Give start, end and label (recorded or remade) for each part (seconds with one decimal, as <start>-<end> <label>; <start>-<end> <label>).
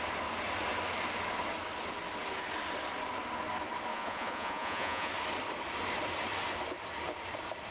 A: 0.0-3.9 recorded; 3.9-5.1 remade; 5.1-7.7 recorded